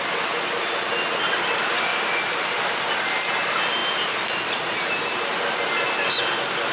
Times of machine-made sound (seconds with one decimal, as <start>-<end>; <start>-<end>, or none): 1.9-2.7; 3.8-5.0